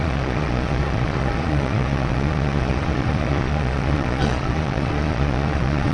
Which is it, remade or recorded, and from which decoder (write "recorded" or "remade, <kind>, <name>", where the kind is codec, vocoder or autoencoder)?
remade, vocoder, Vocos